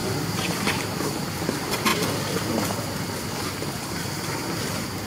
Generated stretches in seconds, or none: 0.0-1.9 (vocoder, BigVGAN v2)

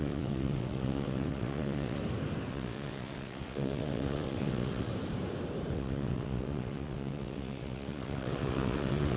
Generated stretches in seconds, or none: 0.0-2.0 (vocoder, WaveNeXt); 2.5-4.9; 5.7-9.2

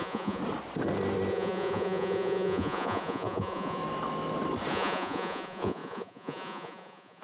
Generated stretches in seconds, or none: 0.0-0.4 (vocoder, Vocos); 1.3-3.8; 4.7-7.2

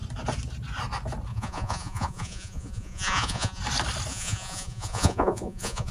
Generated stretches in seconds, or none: 1.3-3.6 (vocoder, Vocos); 4.1-5.9

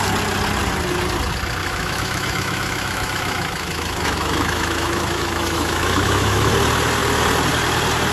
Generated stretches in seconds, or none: 1.6-6.5 (autoencoder, DAC-VAE)

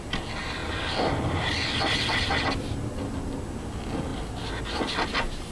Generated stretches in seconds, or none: 0.6-2.4 (vocoder, BigVGAN v2)

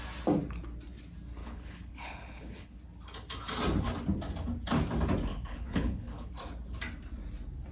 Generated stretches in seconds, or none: 1.4-2.8 (codec, HILCodec); 5.3-6.3

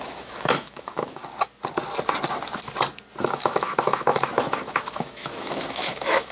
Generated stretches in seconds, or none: 0.0-1.2 (autoencoder, DAC-VAE); 3.2-6.3